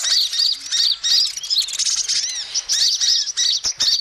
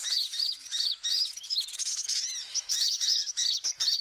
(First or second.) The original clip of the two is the first